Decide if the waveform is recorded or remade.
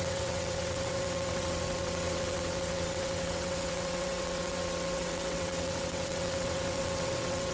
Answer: remade